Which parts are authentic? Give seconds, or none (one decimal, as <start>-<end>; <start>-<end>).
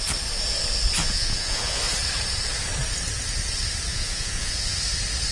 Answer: 0.0-1.0; 1.8-3.9; 4.8-5.3